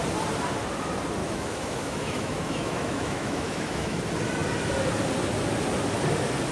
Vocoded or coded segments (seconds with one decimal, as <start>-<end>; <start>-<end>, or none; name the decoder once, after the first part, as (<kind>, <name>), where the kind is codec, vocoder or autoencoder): 1.2-4.0 (autoencoder, DAC-VAE)